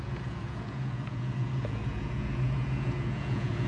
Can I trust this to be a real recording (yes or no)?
no